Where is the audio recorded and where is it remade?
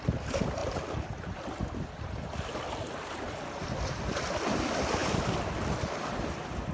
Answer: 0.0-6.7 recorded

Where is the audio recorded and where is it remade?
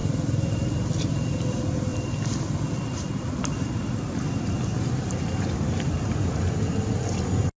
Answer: 0.0-7.6 recorded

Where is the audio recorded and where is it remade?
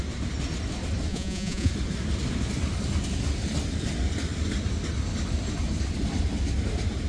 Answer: 0.0-1.1 recorded; 1.1-1.7 remade; 1.7-7.1 recorded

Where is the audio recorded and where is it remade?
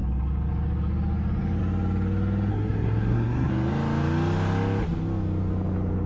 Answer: 0.0-2.5 recorded; 2.5-3.5 remade; 3.5-6.1 recorded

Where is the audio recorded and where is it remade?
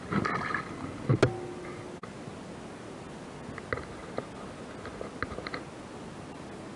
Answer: 0.0-6.8 recorded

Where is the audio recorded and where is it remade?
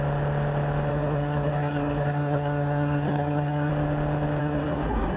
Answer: 0.0-0.9 recorded; 0.9-3.7 remade; 3.7-4.4 recorded; 4.4-5.2 remade